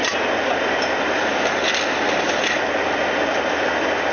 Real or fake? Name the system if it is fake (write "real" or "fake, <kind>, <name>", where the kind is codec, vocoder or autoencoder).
real